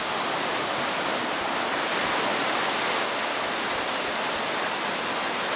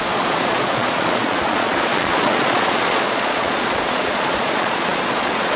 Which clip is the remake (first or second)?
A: second